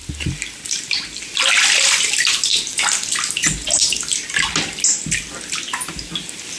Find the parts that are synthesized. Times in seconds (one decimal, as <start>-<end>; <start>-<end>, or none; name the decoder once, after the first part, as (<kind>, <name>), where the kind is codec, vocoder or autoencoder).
none